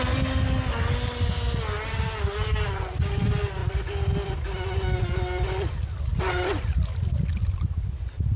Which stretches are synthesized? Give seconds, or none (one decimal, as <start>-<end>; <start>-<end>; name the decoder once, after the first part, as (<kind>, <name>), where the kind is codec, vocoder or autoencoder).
none